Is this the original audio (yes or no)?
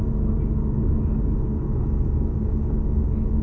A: yes